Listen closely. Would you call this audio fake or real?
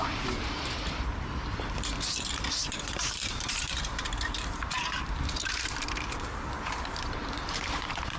fake